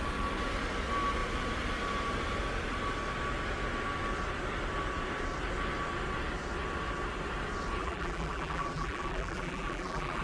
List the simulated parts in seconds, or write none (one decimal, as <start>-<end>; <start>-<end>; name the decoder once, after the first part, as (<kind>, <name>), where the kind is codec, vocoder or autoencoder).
7.8-10.2 (vocoder, BigVGAN v2)